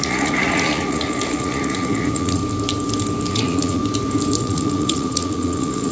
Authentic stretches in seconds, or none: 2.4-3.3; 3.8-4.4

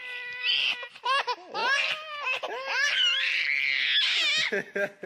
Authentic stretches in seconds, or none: 0.0-5.1

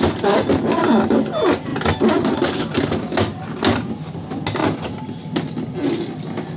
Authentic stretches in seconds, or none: 0.0-6.6

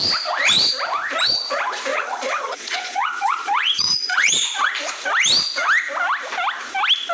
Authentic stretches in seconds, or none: 0.0-1.9; 4.7-7.1

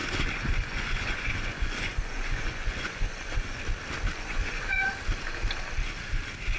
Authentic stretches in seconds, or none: 3.6-4.1; 4.9-6.6

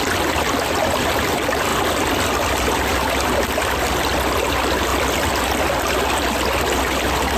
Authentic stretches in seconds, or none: 0.0-7.4